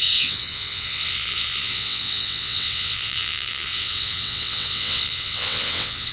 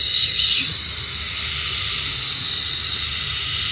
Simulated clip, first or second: first